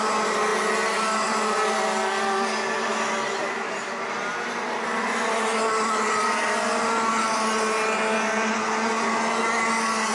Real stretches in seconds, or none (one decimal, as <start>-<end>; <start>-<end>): 0.0-10.1